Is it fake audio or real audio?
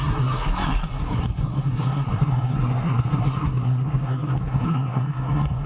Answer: fake